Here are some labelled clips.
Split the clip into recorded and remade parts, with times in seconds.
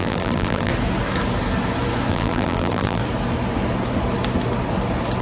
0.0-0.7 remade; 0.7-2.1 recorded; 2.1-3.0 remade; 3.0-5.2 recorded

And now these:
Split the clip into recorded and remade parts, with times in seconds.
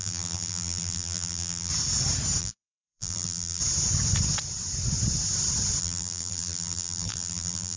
0.0-1.7 remade; 1.7-2.4 recorded; 2.4-3.6 remade; 3.6-5.8 recorded; 5.8-7.8 remade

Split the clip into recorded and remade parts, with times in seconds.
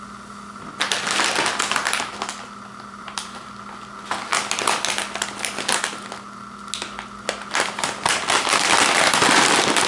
0.0-2.7 recorded; 2.7-3.5 remade; 3.5-9.9 recorded